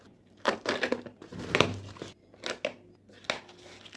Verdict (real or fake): real